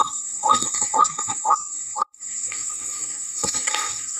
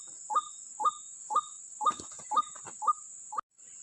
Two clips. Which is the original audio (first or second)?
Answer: second